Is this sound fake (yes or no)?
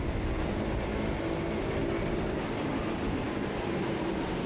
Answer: no